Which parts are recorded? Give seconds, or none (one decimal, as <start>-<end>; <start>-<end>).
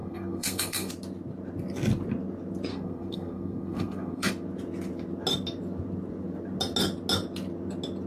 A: 0.9-2.7; 4.3-8.1